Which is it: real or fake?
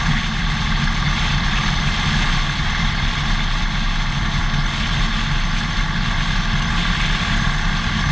real